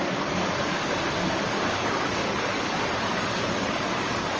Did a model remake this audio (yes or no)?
yes